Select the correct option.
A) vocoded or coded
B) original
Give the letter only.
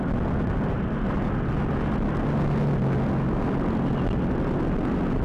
B